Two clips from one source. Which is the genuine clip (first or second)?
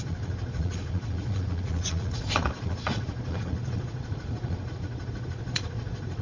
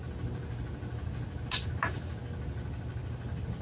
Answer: second